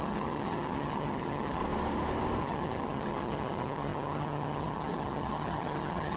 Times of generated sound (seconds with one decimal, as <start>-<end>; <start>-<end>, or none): 0.0-1.6; 2.4-6.2